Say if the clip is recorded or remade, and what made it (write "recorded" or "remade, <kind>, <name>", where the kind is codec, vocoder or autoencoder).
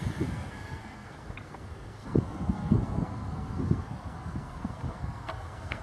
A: remade, codec, SNAC